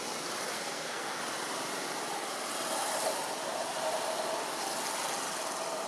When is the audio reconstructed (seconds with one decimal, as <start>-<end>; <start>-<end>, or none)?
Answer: 0.5-1.2